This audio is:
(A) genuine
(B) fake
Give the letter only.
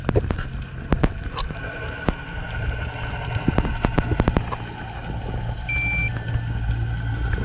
A